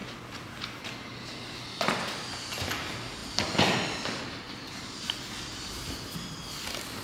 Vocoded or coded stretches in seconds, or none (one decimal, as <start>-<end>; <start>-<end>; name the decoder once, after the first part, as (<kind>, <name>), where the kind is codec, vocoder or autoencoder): none